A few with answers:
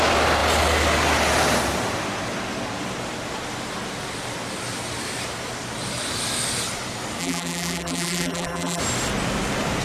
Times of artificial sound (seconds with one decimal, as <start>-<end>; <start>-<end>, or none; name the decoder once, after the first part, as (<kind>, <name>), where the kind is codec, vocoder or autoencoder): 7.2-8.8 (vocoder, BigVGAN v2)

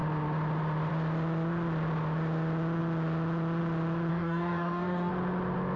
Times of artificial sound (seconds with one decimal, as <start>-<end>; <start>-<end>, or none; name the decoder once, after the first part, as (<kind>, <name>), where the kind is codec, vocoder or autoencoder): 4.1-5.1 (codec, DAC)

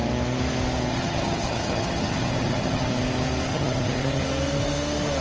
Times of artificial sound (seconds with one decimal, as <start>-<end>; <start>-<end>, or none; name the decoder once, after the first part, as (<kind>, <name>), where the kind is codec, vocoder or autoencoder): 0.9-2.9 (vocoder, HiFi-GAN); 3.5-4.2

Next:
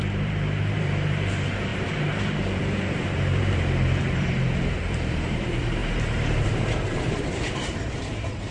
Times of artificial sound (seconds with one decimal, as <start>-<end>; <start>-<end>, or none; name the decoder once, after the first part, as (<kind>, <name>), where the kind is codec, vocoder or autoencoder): 0.0-8.5 (vocoder, BigVGAN v2)

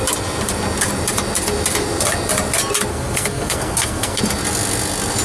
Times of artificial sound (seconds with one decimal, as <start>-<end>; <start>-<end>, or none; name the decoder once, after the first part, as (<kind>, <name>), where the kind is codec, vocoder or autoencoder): 2.9-4.2 (codec, SNAC)

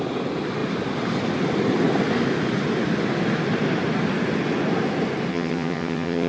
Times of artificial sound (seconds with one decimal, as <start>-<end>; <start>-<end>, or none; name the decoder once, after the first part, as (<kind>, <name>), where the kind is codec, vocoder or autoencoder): 5.3-6.3 (vocoder, HiFi-GAN)

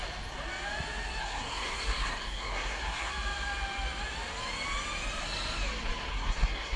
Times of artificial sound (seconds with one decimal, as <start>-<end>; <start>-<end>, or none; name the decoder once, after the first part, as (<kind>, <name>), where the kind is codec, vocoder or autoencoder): 1.2-3.1 (codec, SNAC); 6.1-6.8